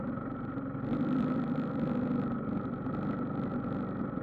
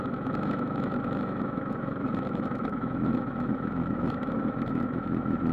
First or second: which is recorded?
first